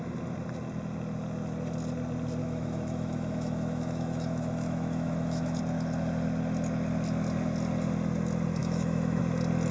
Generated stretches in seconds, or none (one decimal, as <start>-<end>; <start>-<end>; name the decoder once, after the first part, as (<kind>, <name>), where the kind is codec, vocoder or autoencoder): 2.4-5.6 (autoencoder, DAC-VAE); 8.6-9.2